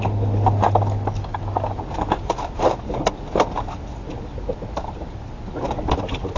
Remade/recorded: recorded